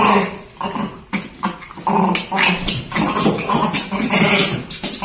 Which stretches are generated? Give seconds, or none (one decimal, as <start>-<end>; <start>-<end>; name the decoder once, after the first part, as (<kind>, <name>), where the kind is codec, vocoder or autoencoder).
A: none

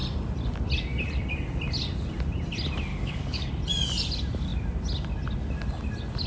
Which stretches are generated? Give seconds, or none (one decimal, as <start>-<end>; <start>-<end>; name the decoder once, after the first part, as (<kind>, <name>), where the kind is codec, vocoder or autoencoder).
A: 2.9-3.5 (codec, DAC)